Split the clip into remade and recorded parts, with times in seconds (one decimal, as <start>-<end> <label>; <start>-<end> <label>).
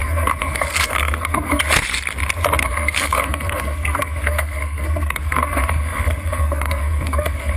0.0-1.6 remade; 1.6-2.6 recorded; 2.6-7.6 remade